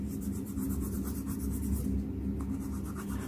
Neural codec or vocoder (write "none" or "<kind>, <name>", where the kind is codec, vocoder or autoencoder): none